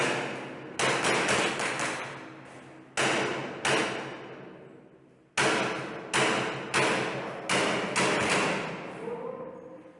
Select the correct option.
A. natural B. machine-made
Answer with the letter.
A